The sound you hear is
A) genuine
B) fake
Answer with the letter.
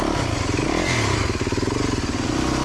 A